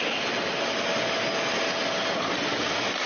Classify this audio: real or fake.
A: real